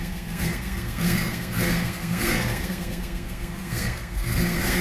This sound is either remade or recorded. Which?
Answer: remade